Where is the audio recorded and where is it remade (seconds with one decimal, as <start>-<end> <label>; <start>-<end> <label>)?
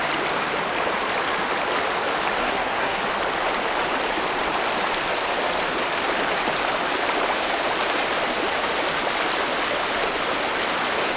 0.0-2.4 recorded; 2.4-3.0 remade; 3.0-11.2 recorded